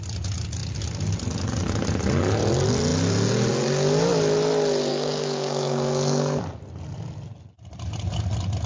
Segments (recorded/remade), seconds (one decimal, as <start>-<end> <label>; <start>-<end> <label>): 0.0-4.9 recorded; 4.9-6.4 remade; 6.4-8.7 recorded